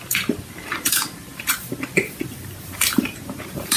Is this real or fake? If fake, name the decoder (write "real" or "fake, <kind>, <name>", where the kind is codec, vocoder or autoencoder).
fake, vocoder, BigVGAN v2